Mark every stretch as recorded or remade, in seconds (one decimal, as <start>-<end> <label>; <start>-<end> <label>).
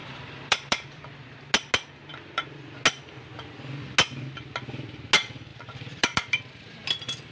0.0-1.4 remade; 1.4-2.1 recorded; 2.1-2.8 remade; 2.8-5.5 recorded; 5.5-7.3 remade